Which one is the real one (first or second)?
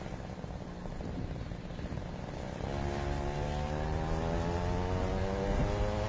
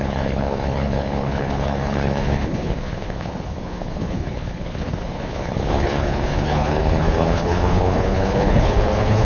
first